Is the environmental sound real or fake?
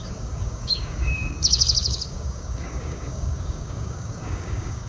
fake